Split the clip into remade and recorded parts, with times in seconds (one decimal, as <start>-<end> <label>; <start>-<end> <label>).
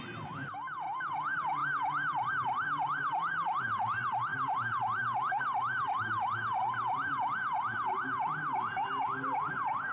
0.0-9.9 recorded